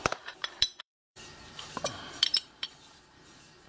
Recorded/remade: remade